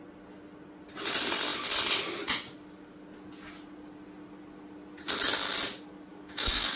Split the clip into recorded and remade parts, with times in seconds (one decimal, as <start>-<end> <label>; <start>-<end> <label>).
0.0-6.1 recorded; 6.1-6.8 remade